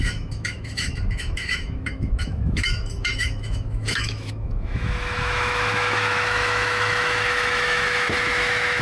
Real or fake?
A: fake